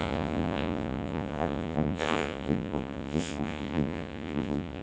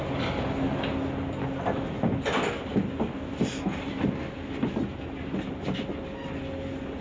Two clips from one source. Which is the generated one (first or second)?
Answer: first